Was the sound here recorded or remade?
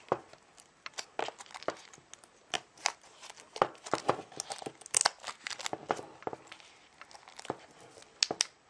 recorded